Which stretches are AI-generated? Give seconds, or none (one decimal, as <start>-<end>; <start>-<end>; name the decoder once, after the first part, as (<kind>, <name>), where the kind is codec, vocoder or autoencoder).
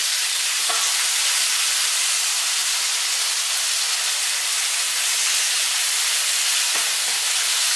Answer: 0.0-0.7 (vocoder, BigVGAN v2)